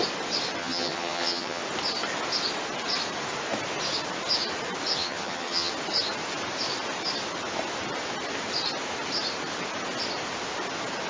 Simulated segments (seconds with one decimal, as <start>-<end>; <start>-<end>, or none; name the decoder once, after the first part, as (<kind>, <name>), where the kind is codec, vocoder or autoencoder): 0.6-1.6 (vocoder, HiFi-GAN); 5.0-5.7

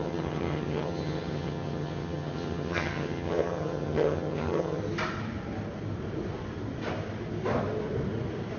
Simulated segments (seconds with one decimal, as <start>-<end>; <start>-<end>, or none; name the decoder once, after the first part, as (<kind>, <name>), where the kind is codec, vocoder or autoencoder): 0.0-4.8 (vocoder, HiFi-GAN)